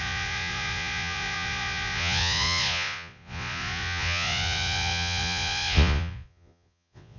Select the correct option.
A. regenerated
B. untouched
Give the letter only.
A